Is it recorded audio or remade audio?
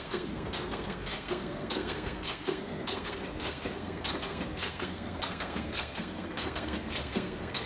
remade